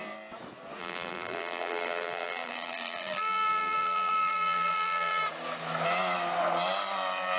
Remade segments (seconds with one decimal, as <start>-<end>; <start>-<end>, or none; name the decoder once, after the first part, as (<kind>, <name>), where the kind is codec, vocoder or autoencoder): 0.8-5.2 (vocoder, BigVGAN v2)